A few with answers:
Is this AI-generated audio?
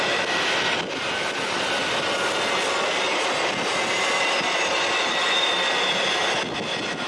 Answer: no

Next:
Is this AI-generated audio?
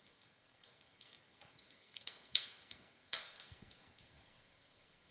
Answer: yes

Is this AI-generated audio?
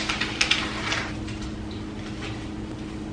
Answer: no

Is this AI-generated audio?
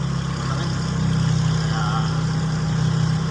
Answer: no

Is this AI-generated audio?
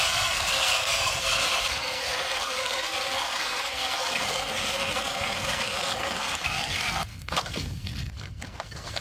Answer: yes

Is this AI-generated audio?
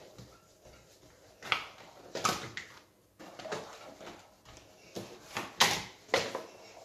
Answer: no